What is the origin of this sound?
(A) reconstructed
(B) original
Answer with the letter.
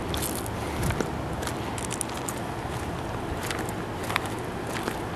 B